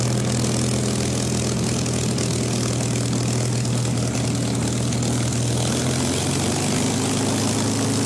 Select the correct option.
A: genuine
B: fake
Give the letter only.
A